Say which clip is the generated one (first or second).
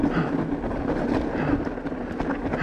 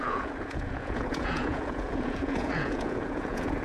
second